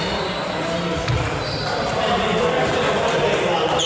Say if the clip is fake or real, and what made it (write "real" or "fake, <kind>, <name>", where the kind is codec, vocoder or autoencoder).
real